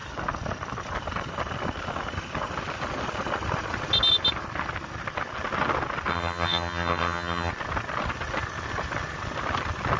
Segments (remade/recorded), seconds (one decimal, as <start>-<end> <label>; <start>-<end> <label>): 0.0-6.1 recorded; 6.1-7.5 remade; 7.5-10.0 recorded